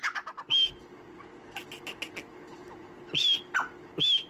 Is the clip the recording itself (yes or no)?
yes